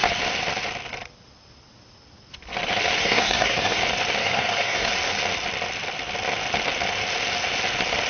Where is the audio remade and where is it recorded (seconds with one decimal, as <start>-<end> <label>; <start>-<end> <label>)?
0.0-3.0 recorded; 3.0-3.8 remade; 3.8-4.2 recorded; 4.2-4.9 remade; 4.9-8.1 recorded